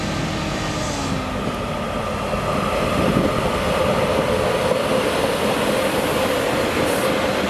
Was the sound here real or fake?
real